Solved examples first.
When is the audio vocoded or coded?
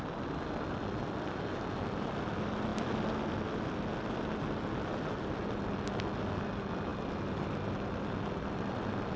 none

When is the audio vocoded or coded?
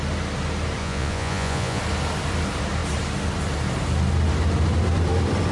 0.8-1.8 (vocoder, Vocos)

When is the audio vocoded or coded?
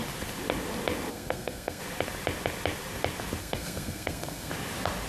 1.1-1.8 (codec, SNAC); 3.4-4.5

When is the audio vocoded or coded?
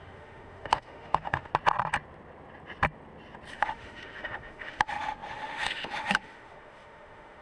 0.0-1.5 (autoencoder, DAC-VAE); 3.5-7.4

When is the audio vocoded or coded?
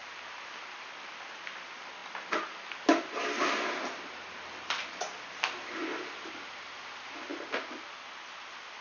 none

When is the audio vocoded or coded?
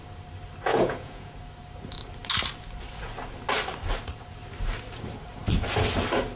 0.7-1.3 (vocoder, Vocos)